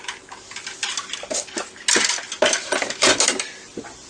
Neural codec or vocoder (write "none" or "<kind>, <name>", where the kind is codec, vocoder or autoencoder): none